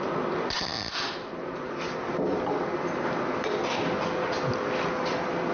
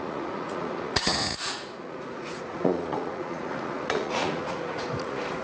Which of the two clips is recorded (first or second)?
first